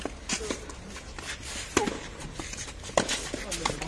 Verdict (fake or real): real